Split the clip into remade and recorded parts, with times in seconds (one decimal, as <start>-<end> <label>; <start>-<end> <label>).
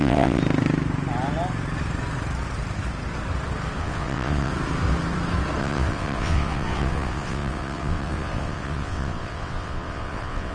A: 0.0-0.4 remade; 0.4-3.8 recorded; 3.8-4.5 remade; 4.5-5.6 recorded; 5.6-10.5 remade